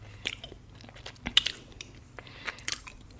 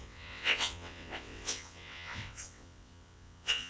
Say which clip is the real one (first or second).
first